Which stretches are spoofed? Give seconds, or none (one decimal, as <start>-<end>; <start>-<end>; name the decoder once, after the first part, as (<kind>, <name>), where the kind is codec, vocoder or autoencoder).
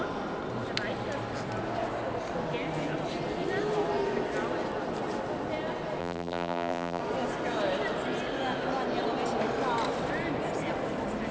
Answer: 6.0-7.0 (vocoder, BigVGAN v2)